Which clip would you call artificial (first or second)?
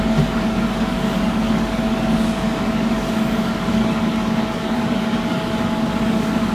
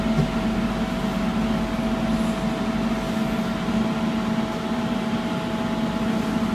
first